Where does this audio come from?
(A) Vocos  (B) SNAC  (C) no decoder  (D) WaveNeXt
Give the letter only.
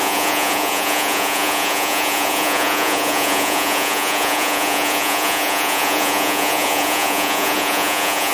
A